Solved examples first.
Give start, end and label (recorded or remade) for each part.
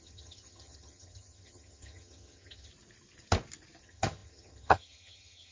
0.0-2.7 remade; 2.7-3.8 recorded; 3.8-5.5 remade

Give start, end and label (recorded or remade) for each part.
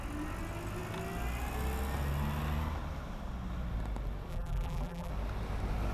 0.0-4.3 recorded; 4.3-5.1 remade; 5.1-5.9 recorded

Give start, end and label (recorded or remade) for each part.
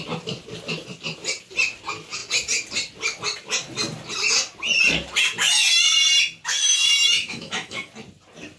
0.0-6.6 recorded; 6.6-7.9 remade; 7.9-8.6 recorded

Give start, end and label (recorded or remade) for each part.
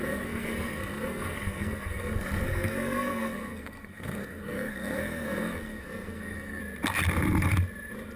0.0-6.6 remade; 6.6-8.2 recorded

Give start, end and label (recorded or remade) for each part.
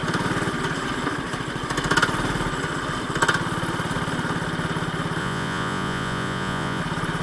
0.0-5.2 recorded; 5.2-6.8 remade; 6.8-7.2 recorded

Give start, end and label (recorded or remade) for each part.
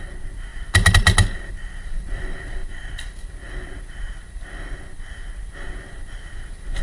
0.0-6.8 recorded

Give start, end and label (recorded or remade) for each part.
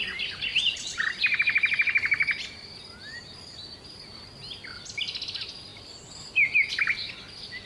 0.0-7.7 recorded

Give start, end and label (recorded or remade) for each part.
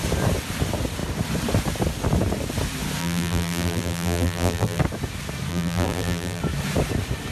0.0-3.0 recorded; 3.0-4.8 remade; 4.8-5.5 recorded; 5.5-6.4 remade; 6.4-7.3 recorded